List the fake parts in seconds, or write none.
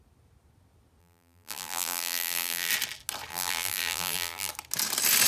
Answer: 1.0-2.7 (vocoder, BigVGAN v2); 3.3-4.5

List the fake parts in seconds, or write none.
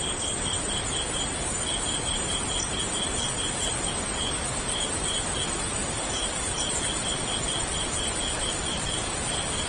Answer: 2.8-4.0 (vocoder, BigVGAN v2); 5.8-9.7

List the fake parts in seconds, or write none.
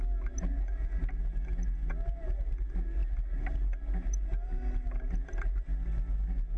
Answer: none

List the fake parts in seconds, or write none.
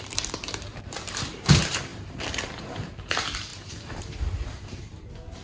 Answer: 0.0-5.4 (vocoder, BigVGAN v2)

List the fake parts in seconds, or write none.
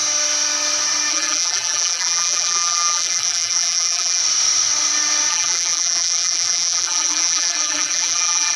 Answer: 1.1-4.2 (vocoder, BigVGAN v2); 5.3-8.6